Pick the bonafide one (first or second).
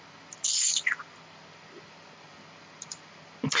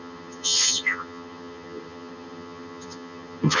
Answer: first